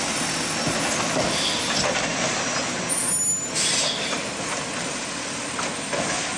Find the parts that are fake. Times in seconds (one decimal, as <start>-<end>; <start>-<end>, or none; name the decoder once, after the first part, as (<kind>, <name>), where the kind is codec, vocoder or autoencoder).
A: none